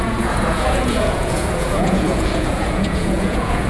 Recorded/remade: remade